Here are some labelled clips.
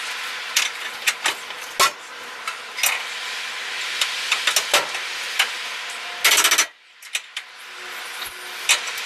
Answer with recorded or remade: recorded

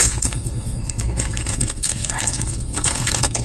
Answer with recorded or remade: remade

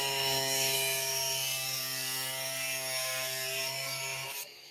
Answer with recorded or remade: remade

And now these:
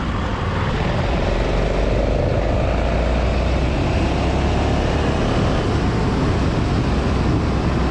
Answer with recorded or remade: recorded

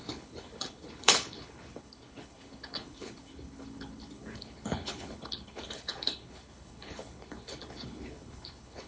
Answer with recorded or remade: remade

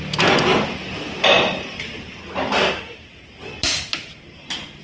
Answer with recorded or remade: recorded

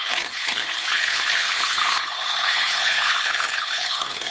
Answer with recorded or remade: remade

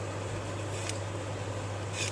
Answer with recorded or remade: recorded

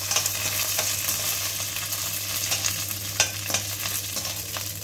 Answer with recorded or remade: recorded